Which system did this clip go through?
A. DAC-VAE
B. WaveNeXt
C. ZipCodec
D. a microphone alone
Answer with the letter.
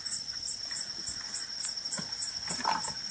D